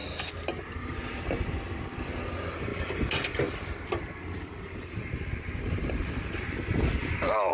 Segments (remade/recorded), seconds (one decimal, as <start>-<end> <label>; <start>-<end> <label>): 0.0-7.5 recorded